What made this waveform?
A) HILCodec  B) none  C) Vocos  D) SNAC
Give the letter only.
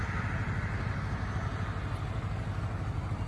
B